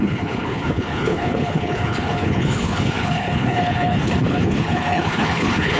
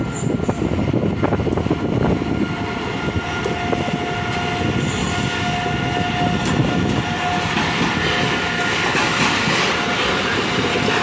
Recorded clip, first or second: second